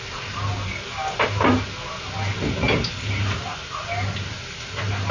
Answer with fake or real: real